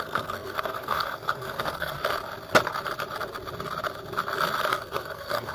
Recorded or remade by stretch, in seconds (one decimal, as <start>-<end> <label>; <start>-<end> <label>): 0.0-2.0 remade; 2.0-4.7 recorded; 4.7-5.5 remade